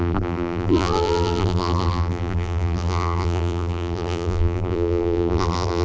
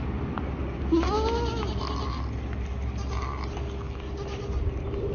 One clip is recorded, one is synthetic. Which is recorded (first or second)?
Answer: second